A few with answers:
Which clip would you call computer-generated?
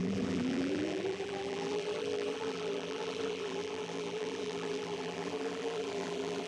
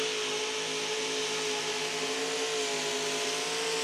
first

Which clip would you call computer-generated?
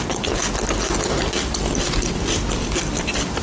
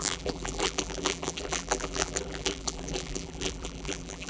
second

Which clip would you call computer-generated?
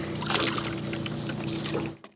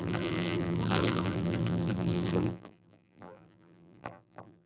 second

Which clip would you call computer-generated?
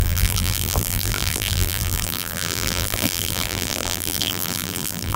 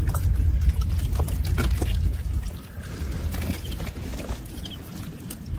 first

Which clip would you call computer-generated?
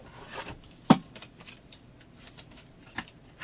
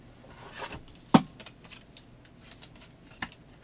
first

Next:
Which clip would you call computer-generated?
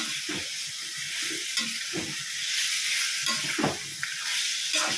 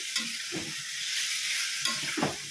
second